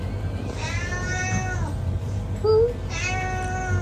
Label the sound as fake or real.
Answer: real